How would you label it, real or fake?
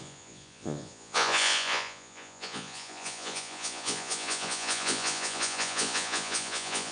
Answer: fake